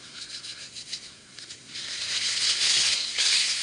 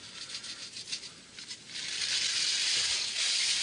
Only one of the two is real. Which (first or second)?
second